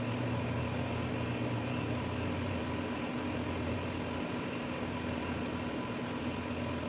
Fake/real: real